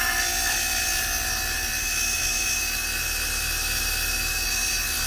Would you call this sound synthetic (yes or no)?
no